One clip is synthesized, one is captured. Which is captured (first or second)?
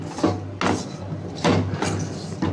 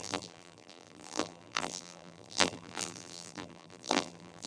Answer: first